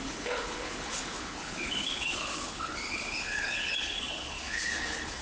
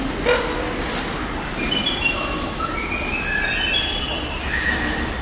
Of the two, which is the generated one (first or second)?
first